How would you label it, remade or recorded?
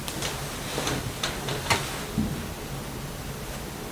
recorded